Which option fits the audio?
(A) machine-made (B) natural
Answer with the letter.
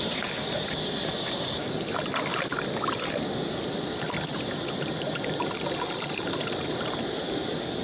B